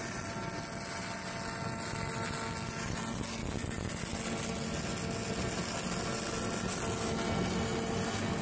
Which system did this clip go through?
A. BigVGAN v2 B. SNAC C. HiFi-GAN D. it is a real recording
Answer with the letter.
D